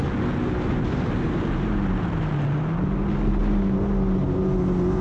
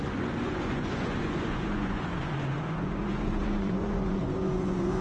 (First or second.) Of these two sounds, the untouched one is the first